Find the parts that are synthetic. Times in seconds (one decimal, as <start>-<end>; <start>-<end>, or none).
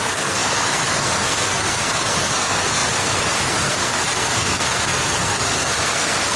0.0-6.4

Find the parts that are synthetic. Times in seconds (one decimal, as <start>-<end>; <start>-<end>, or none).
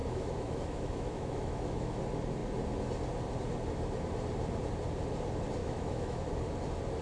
0.0-2.0; 5.6-6.3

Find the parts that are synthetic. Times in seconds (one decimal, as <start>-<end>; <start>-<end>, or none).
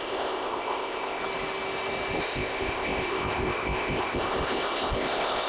0.0-1.2; 2.2-5.5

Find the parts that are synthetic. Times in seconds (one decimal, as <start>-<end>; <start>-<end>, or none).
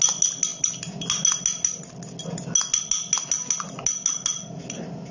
none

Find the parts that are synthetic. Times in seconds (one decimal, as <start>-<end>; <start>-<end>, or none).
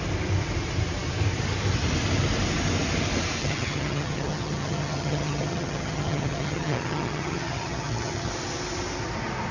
3.4-8.3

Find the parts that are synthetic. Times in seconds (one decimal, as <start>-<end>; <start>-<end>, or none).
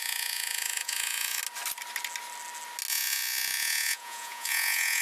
0.0-1.4; 2.9-5.0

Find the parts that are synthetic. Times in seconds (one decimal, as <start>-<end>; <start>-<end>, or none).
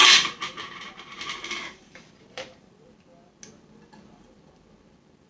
0.0-2.9